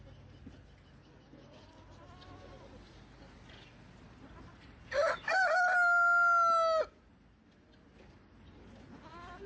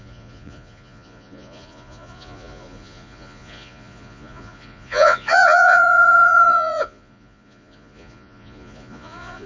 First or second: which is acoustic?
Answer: first